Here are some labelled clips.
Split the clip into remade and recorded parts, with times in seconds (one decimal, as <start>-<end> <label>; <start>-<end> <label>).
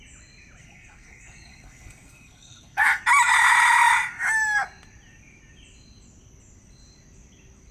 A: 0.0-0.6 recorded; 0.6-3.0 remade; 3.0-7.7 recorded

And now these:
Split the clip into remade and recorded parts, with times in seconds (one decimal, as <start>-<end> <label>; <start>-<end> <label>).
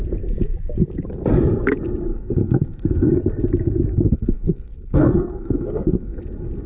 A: 0.0-2.1 recorded; 2.1-3.1 remade; 3.1-3.9 recorded; 3.9-6.2 remade; 6.2-6.7 recorded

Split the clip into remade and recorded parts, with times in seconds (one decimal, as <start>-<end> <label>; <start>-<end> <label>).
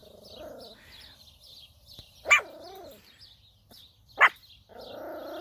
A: 0.0-5.4 recorded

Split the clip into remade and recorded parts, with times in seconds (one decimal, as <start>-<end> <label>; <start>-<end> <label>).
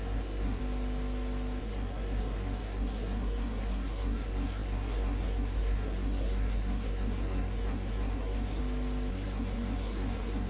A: 0.0-0.6 remade; 0.6-1.6 recorded; 1.6-8.6 remade; 8.6-9.1 recorded; 9.1-10.5 remade